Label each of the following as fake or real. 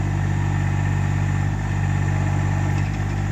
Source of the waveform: real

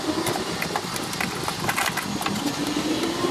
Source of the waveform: real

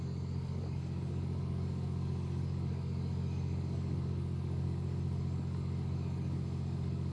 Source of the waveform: fake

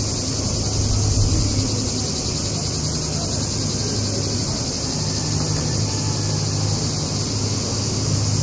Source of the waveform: real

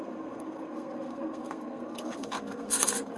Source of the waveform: fake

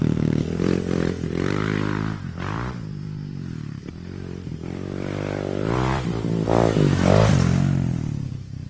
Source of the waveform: fake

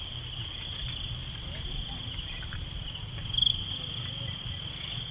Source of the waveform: real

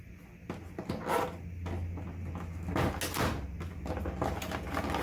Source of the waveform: real